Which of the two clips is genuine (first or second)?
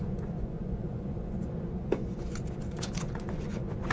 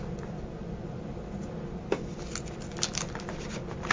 second